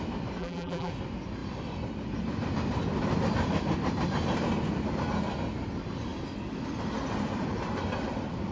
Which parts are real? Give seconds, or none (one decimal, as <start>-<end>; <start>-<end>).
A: 0.0-0.4; 0.9-8.5

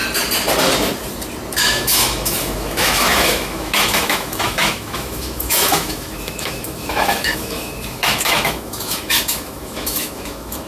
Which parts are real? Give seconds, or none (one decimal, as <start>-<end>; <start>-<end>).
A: 0.0-1.6

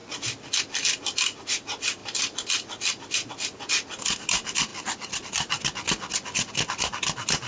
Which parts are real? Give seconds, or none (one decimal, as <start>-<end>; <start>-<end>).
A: 0.0-7.5